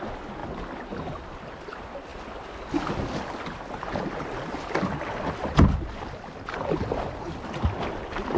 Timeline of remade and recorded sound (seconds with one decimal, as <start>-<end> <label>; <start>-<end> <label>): 0.0-8.4 recorded